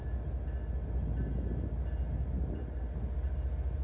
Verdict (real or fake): real